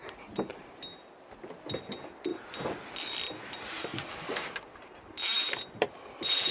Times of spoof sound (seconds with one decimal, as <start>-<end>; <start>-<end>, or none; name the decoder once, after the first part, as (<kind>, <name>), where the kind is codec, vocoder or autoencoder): none